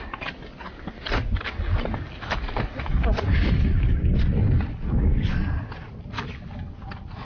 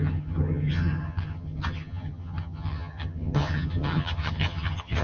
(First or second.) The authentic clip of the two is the first